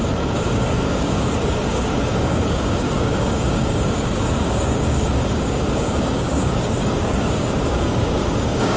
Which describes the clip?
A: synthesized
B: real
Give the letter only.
A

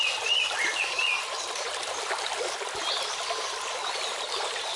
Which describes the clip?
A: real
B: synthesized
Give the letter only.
A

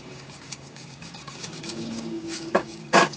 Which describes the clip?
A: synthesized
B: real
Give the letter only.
A